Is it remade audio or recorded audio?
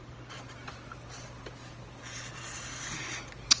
recorded